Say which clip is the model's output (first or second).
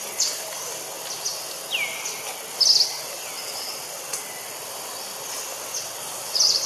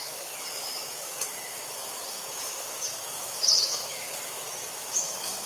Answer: second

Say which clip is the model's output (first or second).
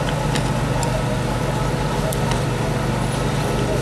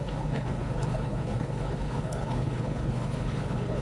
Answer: second